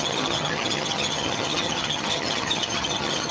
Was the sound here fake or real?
fake